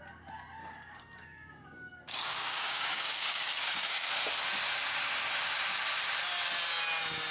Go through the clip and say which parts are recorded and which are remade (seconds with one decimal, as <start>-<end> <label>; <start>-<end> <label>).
0.0-0.6 recorded; 0.6-4.1 remade; 4.1-7.3 recorded